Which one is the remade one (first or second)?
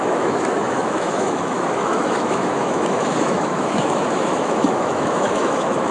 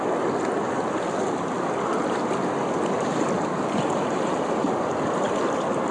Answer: first